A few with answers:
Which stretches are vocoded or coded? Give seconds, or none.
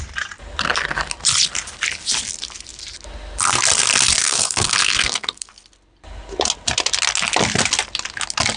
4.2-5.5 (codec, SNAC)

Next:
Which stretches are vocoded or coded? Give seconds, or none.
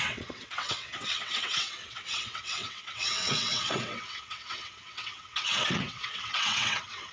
0.0-7.1 (vocoder, WaveNeXt)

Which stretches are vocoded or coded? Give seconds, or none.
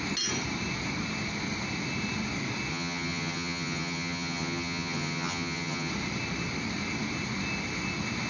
2.7-5.9 (vocoder, HiFi-GAN)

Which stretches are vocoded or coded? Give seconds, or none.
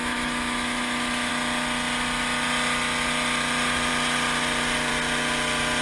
0.0-1.3 (autoencoder, DAC-VAE)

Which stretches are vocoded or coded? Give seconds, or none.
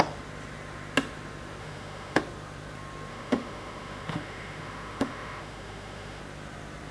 1.6-2.2 (autoencoder, DAC-VAE); 3.1-6.2